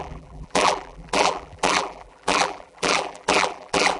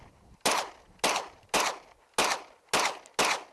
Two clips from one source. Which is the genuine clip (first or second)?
second